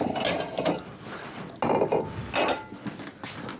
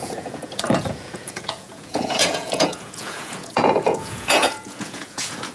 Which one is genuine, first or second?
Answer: first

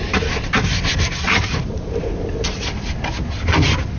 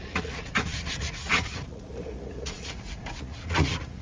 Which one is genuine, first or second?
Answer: first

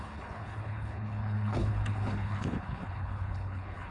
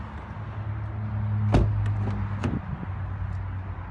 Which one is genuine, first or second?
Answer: second